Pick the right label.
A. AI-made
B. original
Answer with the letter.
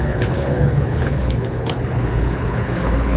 A